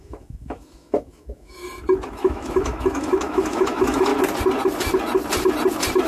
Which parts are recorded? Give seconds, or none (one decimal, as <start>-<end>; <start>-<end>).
1.6-2.1; 4.1-6.1